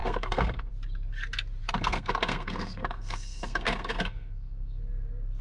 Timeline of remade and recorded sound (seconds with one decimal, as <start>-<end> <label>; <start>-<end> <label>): 0.0-0.7 remade; 0.7-1.6 recorded; 1.6-4.8 remade; 4.8-5.4 recorded

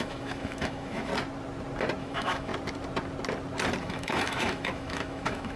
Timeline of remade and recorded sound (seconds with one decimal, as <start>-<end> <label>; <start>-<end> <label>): 0.0-1.1 remade; 1.1-2.0 recorded; 2.0-2.5 remade; 2.5-3.8 recorded; 3.8-5.6 remade